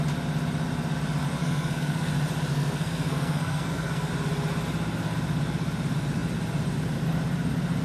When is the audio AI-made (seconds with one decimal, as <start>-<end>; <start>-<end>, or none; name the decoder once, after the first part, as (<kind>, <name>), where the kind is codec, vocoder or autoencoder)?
1.4-2.1 (codec, SNAC); 2.5-4.1